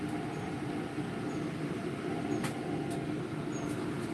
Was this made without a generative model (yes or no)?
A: yes